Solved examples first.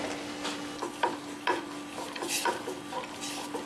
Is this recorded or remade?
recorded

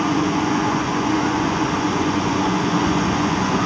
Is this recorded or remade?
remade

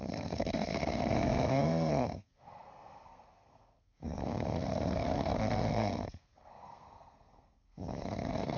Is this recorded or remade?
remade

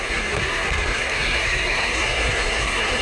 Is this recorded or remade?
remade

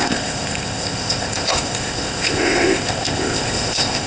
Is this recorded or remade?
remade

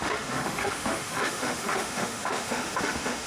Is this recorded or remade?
remade